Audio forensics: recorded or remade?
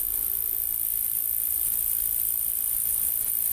recorded